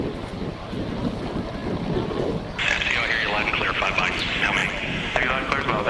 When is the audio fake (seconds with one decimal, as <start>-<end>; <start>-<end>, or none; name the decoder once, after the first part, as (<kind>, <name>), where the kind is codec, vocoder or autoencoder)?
none